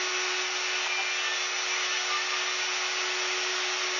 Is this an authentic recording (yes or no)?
yes